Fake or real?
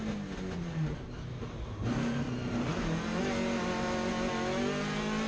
real